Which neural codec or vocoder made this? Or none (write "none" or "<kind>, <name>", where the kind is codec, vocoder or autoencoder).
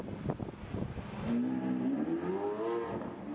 none